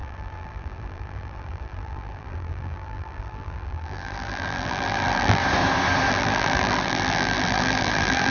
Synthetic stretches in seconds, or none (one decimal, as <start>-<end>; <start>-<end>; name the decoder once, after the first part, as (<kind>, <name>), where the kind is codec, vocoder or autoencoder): 0.0-5.4 (vocoder, BigVGAN v2); 6.1-8.3